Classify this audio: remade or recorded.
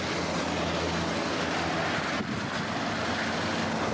recorded